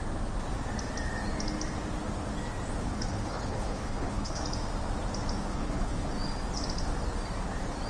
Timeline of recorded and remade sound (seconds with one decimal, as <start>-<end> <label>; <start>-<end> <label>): 0.0-2.8 recorded; 2.8-4.4 remade; 4.4-5.5 recorded; 5.5-6.1 remade; 6.1-7.9 recorded